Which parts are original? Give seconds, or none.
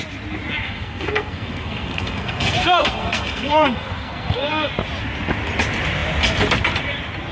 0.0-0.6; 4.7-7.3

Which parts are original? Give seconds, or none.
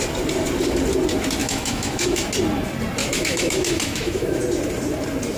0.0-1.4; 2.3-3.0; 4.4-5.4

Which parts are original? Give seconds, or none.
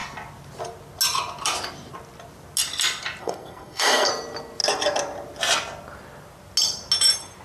0.0-3.2; 4.1-7.4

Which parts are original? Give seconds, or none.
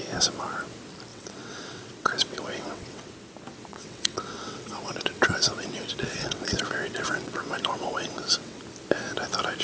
0.0-1.1; 3.1-3.7; 8.6-9.6